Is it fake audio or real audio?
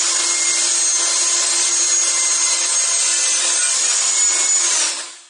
real